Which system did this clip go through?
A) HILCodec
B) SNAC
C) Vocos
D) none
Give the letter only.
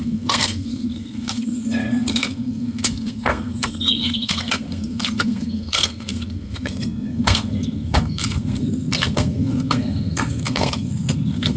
B